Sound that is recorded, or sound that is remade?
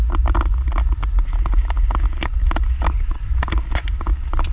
recorded